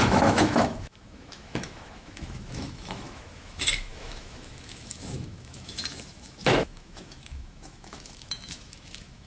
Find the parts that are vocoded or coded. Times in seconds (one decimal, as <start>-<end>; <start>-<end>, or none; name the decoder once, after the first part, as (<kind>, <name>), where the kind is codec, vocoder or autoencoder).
0.0-9.3 (autoencoder, DAC-VAE)